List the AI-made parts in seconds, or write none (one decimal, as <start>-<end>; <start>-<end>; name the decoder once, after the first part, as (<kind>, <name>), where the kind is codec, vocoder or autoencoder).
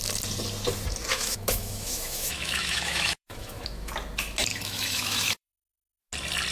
1.1-3.9 (autoencoder, DAC-VAE); 4.5-6.0